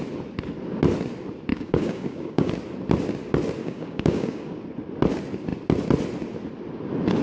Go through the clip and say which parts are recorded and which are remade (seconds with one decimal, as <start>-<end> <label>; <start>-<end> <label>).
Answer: 0.0-1.5 recorded; 1.5-2.5 remade; 2.5-3.6 recorded; 3.6-4.6 remade; 4.6-7.2 recorded